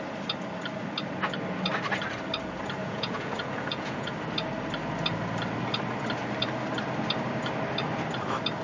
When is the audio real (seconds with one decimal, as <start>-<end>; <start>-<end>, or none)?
0.0-2.8; 4.1-8.6